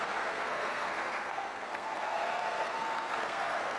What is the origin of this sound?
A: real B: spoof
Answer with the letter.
B